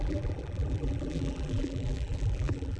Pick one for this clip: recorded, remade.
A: remade